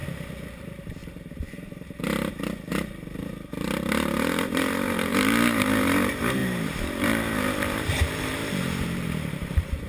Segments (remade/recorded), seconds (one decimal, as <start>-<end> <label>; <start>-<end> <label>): 0.0-0.6 recorded; 0.6-9.9 remade